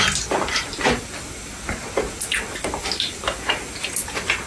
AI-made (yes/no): no